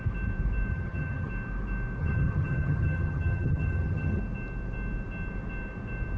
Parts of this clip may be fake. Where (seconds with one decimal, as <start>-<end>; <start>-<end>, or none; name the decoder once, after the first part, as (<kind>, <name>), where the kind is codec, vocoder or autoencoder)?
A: 0.7-1.3 (vocoder, HiFi-GAN); 2.0-4.2